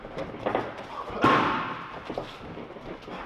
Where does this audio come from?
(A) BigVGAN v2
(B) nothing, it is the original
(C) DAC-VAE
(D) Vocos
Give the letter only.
B